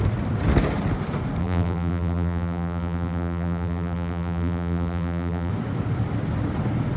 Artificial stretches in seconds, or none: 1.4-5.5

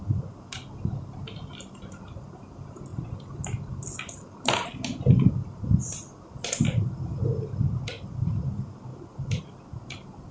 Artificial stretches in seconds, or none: 8.9-9.4

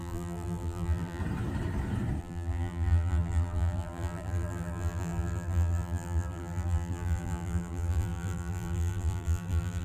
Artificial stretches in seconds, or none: 0.0-1.2; 2.2-9.8

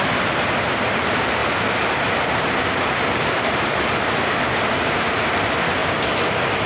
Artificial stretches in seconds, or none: 0.0-1.4; 2.6-5.8

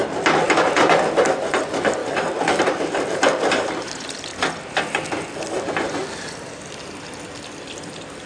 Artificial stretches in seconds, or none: 2.0-3.9

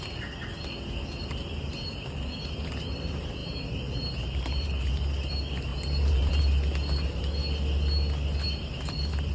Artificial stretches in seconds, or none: 3.4-5.3; 5.7-6.4

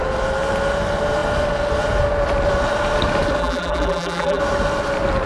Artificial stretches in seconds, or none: 3.4-4.4